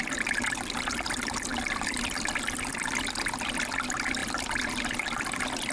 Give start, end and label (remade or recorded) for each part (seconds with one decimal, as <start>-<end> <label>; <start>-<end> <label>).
0.0-5.7 recorded